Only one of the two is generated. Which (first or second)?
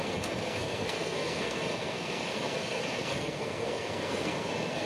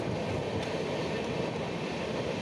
first